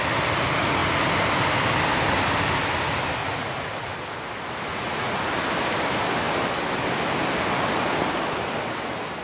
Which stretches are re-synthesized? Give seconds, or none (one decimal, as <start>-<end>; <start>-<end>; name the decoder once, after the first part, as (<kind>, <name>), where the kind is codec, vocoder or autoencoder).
3.2-3.9 (vocoder, Vocos); 4.7-5.3